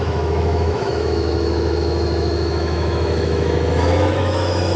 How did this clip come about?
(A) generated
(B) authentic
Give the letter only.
A